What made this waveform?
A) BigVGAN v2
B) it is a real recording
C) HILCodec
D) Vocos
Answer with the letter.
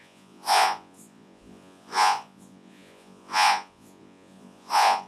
D